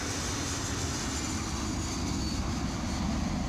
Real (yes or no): yes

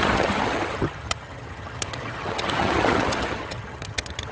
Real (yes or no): no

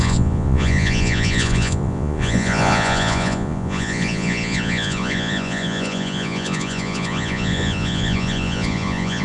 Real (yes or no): no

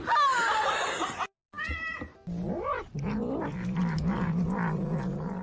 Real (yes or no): yes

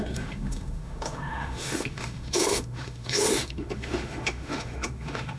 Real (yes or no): no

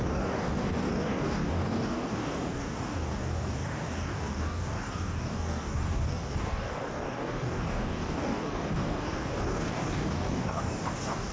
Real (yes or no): no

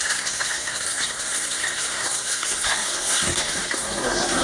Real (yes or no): no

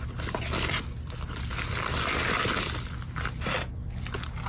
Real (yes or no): yes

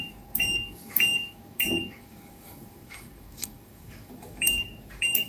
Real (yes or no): no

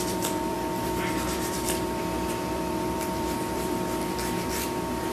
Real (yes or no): no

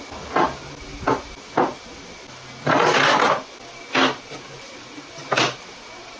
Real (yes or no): yes